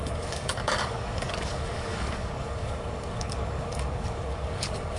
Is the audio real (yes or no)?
no